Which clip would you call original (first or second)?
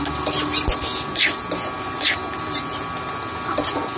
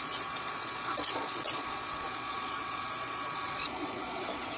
first